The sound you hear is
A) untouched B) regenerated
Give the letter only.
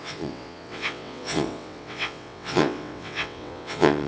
B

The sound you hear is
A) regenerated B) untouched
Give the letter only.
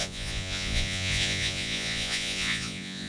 A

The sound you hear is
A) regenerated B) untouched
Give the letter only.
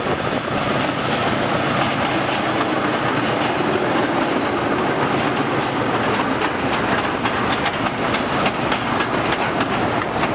B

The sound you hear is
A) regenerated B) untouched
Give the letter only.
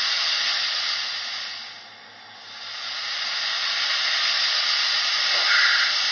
B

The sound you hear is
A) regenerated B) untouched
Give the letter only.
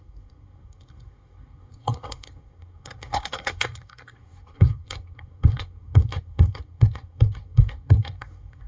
A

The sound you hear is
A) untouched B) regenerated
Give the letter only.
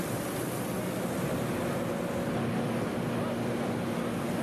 A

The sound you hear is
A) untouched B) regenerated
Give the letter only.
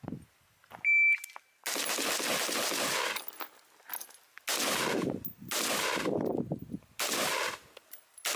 A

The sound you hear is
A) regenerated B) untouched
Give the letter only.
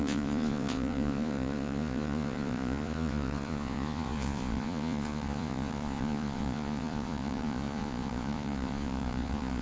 A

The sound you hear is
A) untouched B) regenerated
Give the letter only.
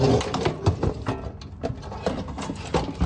A